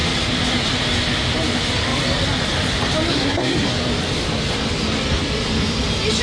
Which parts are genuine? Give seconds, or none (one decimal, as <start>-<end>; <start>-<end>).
0.0-3.1; 3.7-6.2